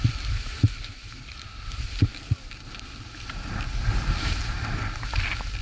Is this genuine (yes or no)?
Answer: yes